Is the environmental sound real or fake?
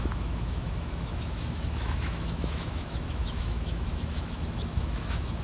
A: fake